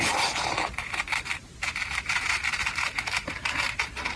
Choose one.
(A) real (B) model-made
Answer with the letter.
B